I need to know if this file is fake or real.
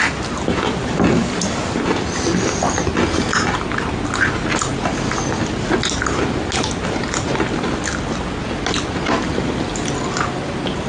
real